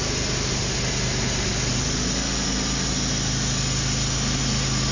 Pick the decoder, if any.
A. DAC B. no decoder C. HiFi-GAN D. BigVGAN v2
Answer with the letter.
B